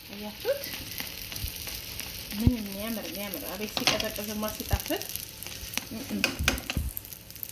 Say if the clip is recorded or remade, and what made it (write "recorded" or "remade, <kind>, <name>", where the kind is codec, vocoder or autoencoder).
recorded